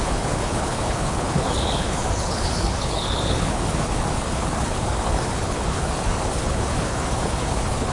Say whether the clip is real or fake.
fake